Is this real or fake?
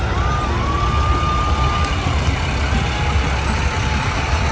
real